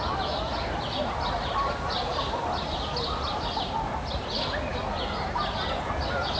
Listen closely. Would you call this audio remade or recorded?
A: recorded